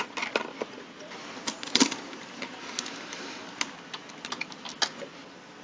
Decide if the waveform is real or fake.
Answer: real